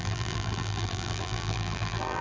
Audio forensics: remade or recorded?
remade